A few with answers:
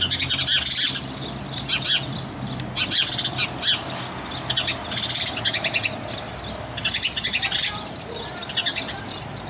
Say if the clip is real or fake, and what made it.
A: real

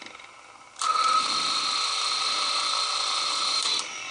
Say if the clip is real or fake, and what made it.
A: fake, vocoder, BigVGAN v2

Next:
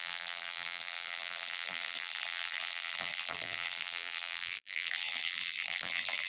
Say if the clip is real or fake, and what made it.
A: fake, vocoder, BigVGAN v2